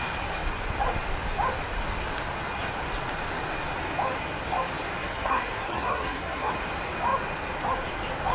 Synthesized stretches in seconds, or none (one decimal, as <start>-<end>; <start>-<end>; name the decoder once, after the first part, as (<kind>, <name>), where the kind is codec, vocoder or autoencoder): 5.0-6.5 (codec, SNAC)